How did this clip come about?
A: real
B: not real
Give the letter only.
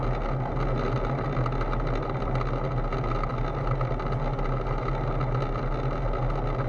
A